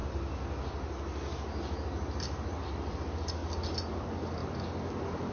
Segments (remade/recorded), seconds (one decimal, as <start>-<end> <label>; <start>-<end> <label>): 0.0-2.7 recorded; 2.7-3.4 remade; 3.4-4.0 recorded; 4.0-4.4 remade; 4.4-5.3 recorded